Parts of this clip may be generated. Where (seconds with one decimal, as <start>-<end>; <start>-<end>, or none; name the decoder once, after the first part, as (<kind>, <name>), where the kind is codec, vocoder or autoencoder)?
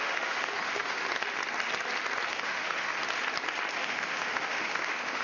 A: 0.0-1.0 (autoencoder, DAC-VAE); 2.3-2.9; 3.7-5.2